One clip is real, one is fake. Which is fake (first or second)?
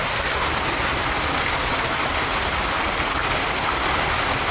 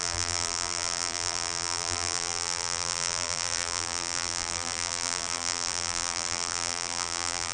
second